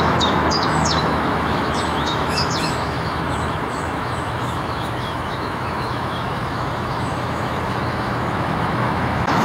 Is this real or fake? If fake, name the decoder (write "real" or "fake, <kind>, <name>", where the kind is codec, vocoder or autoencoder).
fake, autoencoder, DAC-VAE